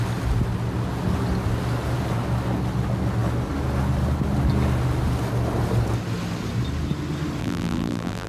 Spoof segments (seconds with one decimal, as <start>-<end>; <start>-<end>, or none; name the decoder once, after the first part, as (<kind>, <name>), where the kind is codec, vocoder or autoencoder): 7.4-8.3 (vocoder, BigVGAN v2)